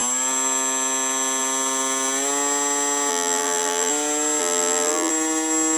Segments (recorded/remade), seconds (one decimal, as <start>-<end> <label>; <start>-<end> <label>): 0.0-3.1 recorded; 3.1-3.9 remade; 3.9-4.4 recorded; 4.4-5.1 remade; 5.1-5.8 recorded